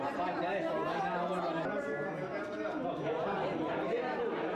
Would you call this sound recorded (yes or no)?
yes